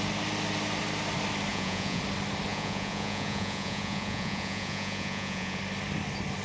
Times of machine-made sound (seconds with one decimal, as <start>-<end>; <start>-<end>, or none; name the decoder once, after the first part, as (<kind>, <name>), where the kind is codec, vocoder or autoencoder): 1.5-2.0 (vocoder, Vocos); 2.5-5.6